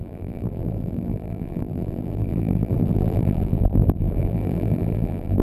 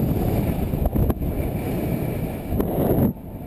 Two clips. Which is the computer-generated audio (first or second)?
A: first